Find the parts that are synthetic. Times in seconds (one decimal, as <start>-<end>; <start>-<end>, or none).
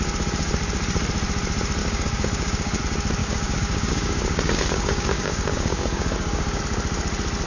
1.8-2.8; 3.2-6.6